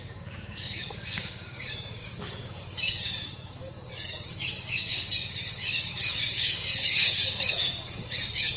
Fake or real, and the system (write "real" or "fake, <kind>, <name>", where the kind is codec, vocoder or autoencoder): fake, codec, DAC